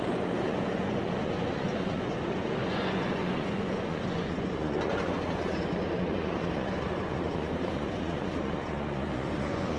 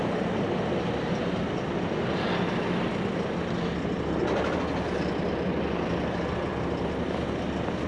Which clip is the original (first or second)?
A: second